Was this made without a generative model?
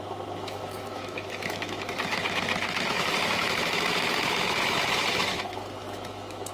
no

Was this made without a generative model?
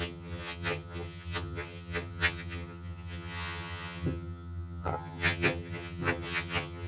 no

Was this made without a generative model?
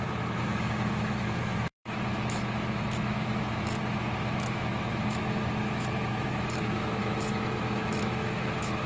no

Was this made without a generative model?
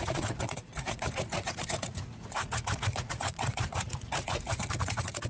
no